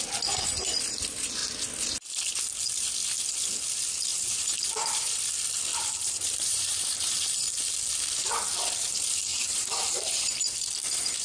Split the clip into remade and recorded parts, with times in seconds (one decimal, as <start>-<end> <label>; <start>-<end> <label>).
0.0-4.1 recorded; 4.1-5.1 remade; 5.1-5.7 recorded; 5.7-7.2 remade; 7.2-9.3 recorded; 9.3-10.3 remade; 10.3-11.2 recorded